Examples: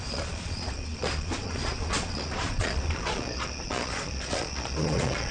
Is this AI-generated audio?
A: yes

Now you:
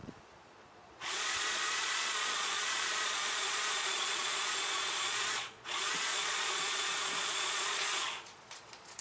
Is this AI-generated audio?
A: yes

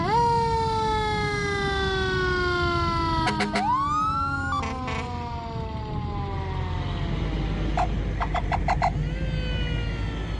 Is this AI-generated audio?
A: no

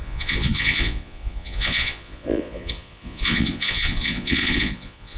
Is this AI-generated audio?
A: yes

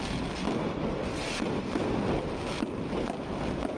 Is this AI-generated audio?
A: no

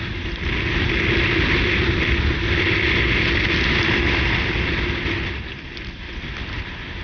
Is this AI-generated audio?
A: no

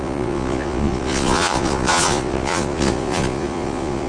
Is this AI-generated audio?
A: yes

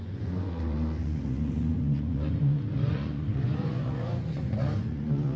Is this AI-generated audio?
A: yes